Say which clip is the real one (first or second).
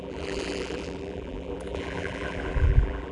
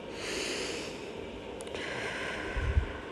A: second